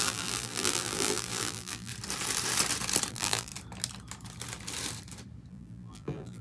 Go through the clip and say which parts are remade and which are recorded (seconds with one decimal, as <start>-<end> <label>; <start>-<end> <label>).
0.0-1.9 remade; 1.9-3.1 recorded; 3.1-3.5 remade; 3.5-5.5 recorded; 5.5-6.4 remade